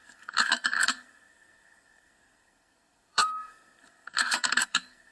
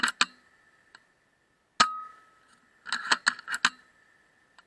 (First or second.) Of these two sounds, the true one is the second